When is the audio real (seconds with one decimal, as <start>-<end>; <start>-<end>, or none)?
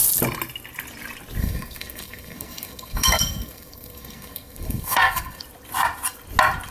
0.0-1.4; 5.4-6.7